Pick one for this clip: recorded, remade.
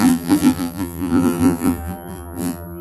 remade